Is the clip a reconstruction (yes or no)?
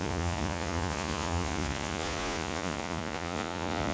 yes